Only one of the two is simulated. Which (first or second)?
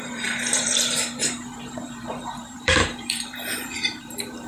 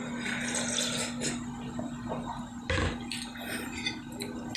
first